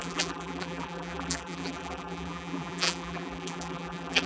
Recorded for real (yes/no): no